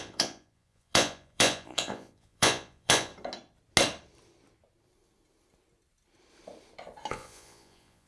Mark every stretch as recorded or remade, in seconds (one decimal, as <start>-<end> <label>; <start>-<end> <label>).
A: 0.0-3.1 remade; 3.1-7.1 recorded; 7.1-8.1 remade